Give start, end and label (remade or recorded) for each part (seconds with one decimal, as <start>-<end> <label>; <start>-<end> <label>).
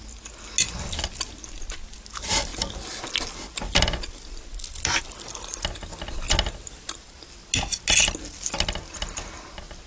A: 0.0-9.9 recorded